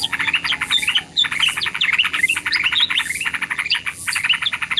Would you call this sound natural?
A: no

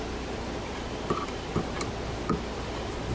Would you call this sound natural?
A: yes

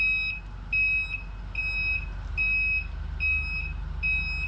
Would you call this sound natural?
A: yes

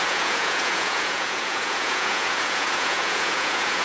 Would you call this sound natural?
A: no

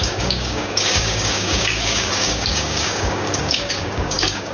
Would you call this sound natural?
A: no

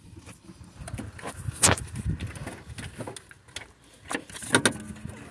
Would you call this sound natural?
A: yes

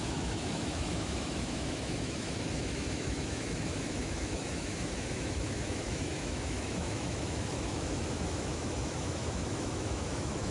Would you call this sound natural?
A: no